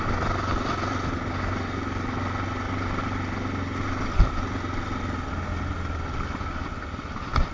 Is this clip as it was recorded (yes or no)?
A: yes